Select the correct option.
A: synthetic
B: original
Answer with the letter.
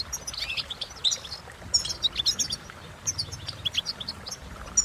B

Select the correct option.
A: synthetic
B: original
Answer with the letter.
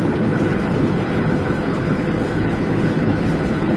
A